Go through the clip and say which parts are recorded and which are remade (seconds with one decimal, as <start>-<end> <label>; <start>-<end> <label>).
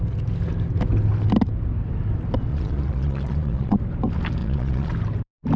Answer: 0.0-2.5 recorded; 2.5-3.8 remade; 3.8-4.4 recorded; 4.4-4.9 remade; 4.9-5.6 recorded